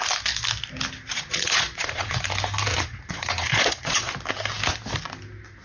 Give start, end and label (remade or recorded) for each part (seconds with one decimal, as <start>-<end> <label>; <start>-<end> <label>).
0.0-1.1 recorded; 1.1-2.2 remade; 2.2-2.7 recorded; 2.7-4.1 remade; 4.1-5.6 recorded